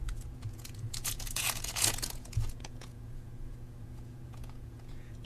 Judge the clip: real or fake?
fake